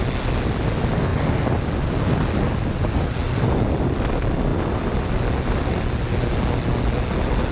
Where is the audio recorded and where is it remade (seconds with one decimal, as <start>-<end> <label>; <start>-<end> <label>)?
0.0-4.5 recorded; 4.5-5.2 remade; 5.2-7.5 recorded